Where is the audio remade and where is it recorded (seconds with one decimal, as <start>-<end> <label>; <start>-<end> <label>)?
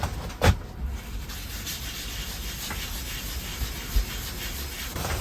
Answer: 0.0-5.2 recorded